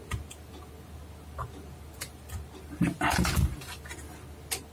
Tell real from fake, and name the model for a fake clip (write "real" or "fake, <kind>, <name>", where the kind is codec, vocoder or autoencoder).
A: real